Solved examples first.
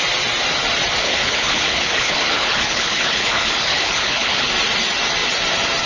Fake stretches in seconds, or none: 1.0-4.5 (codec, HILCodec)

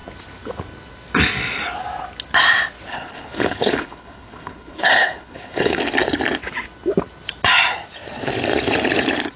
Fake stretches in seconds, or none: 2.9-5.8 (codec, HILCodec)

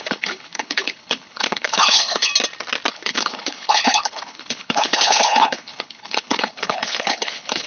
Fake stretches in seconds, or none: 0.0-2.3 (codec, HILCodec); 2.9-7.7

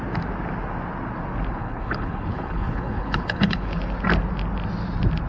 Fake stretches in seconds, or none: 1.6-3.8 (codec, HILCodec)